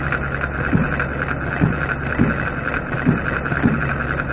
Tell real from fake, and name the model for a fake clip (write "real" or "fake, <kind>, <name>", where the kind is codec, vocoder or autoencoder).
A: real